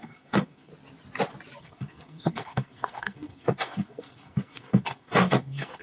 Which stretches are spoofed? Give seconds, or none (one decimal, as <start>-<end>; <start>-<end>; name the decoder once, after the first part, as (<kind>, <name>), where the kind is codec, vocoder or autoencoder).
0.0-0.7 (codec, SNAC); 1.6-5.8